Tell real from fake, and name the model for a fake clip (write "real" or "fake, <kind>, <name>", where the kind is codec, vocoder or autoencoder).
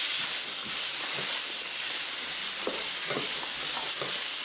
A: real